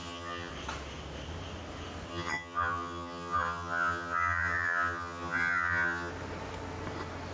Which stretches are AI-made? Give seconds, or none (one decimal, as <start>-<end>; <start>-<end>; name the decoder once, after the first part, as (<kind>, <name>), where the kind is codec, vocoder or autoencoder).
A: 0.0-0.5 (vocoder, HiFi-GAN); 2.1-6.1